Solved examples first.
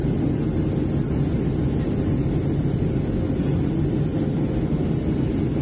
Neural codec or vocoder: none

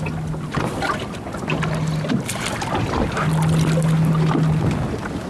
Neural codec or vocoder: none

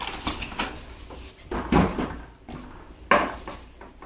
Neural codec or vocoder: none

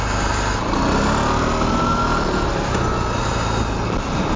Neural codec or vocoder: none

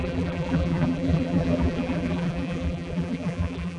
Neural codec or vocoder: vocoder, BigVGAN v2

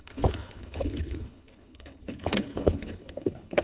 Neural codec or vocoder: codec, HILCodec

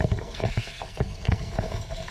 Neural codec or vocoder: codec, SNAC